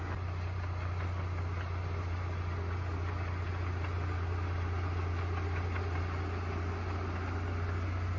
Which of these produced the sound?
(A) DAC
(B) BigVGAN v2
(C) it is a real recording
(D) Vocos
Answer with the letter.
C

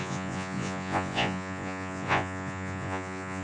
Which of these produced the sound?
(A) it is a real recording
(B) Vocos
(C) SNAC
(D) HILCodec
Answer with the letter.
B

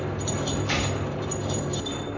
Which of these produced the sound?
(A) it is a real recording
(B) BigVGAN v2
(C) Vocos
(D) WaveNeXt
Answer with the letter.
A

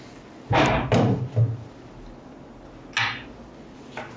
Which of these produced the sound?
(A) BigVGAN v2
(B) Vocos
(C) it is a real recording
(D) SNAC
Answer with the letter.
C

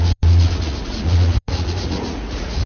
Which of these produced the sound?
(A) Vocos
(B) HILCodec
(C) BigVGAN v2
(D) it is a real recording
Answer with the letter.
A